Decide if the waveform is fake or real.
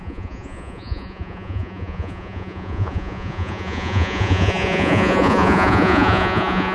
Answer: fake